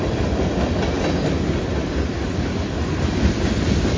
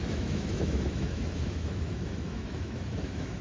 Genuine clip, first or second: first